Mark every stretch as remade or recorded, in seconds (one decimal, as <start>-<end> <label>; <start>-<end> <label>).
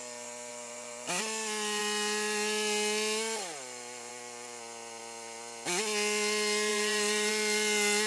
0.0-0.5 recorded; 0.5-1.2 remade; 1.2-6.7 recorded; 6.7-7.3 remade; 7.3-8.1 recorded